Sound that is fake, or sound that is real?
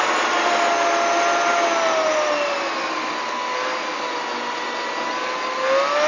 real